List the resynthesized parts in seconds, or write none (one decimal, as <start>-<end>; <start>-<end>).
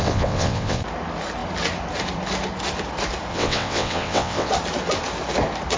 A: 0.0-0.8; 3.3-4.5